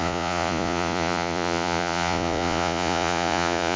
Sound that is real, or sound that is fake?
fake